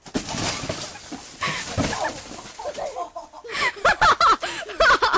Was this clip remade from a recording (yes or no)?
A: no